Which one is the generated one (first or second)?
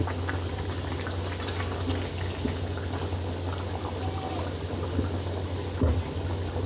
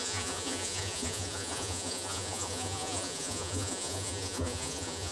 second